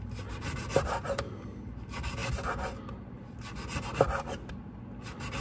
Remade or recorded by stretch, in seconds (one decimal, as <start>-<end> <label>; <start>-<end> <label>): 0.0-5.4 recorded